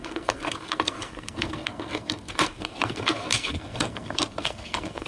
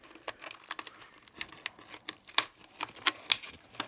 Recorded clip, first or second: second